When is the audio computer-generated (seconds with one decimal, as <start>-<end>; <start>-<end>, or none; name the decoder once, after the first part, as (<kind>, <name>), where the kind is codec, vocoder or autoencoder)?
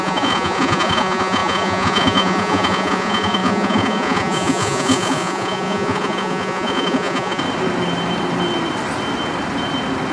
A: 0.0-7.4 (vocoder, Vocos)